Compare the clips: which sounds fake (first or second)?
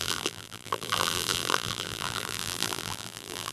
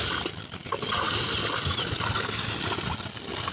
first